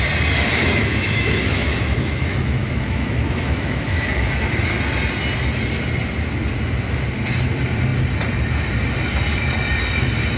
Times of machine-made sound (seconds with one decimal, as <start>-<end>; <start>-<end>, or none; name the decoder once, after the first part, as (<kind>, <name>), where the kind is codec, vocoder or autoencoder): 0.7-4.3 (autoencoder, DAC-VAE)